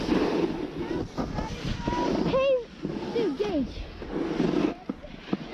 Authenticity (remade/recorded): recorded